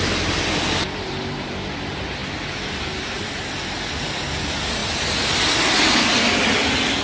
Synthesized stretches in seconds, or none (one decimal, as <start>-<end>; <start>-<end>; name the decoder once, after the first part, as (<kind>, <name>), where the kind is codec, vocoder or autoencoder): none

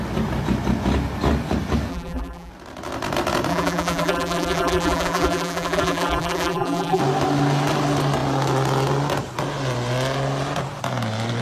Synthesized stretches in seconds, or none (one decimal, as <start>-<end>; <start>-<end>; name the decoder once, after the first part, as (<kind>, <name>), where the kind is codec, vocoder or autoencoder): 1.9-2.5 (vocoder, BigVGAN v2); 3.5-7.0

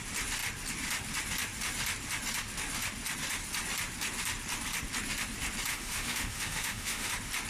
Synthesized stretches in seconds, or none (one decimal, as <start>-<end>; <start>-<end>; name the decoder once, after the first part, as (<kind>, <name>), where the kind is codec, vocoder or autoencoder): 5.7-7.1 (autoencoder, DAC-VAE)

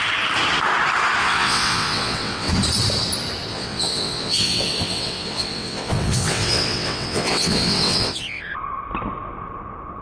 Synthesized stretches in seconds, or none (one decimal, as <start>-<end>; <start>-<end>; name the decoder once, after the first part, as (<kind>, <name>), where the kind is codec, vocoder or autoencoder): 1.2-2.5 (vocoder, WaveNeXt); 3.5-8.5